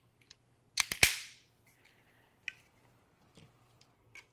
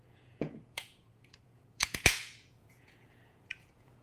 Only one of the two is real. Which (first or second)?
first